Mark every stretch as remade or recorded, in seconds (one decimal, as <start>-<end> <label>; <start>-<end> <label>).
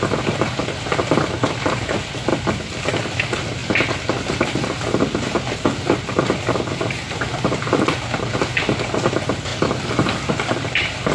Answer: 0.0-3.6 remade; 3.6-7.8 recorded; 7.8-9.5 remade; 9.5-10.3 recorded; 10.3-11.1 remade